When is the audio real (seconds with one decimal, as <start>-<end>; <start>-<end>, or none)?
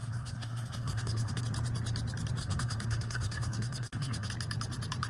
1.4-2.4; 4.3-5.1